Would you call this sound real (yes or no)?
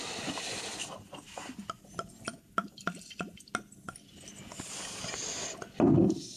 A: yes